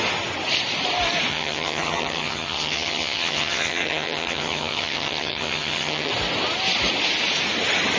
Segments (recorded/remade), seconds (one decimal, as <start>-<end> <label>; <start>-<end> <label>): 0.0-1.3 recorded; 1.3-6.1 remade; 6.1-8.0 recorded